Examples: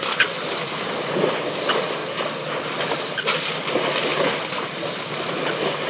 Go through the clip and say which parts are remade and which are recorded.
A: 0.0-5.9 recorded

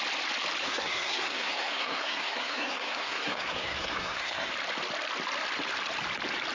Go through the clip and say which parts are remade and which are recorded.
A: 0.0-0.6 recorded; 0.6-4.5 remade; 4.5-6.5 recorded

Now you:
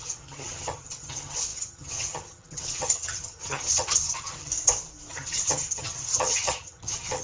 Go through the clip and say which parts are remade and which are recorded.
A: 0.0-4.5 remade; 4.5-5.1 recorded; 5.1-7.2 remade

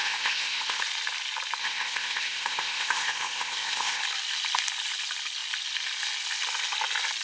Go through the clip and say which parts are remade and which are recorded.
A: 0.0-0.8 remade; 0.8-1.6 recorded; 1.6-4.0 remade; 4.0-7.2 recorded

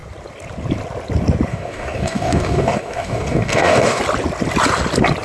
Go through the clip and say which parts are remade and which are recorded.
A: 0.0-1.5 recorded; 1.5-4.0 remade; 4.0-5.2 recorded

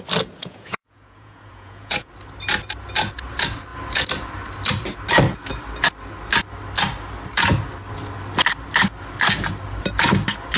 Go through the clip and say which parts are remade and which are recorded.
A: 0.0-0.4 recorded; 0.4-2.1 remade; 2.1-10.6 recorded

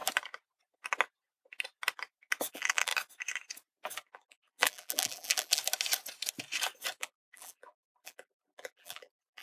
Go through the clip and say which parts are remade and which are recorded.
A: 0.0-2.5 recorded; 2.5-2.9 remade; 2.9-4.1 recorded; 4.1-5.6 remade; 5.6-7.0 recorded; 7.0-9.4 remade